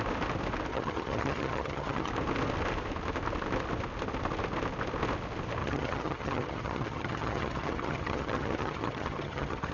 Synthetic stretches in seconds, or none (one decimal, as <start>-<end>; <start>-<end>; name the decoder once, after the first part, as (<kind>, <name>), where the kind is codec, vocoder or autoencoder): 0.7-2.1 (vocoder, HiFi-GAN); 5.6-9.7